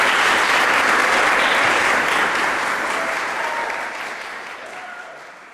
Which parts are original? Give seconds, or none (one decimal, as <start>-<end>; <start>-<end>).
0.0-5.5